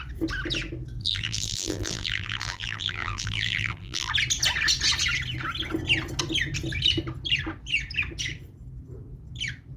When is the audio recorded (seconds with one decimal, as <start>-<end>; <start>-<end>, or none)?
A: 0.0-1.0; 4.1-9.8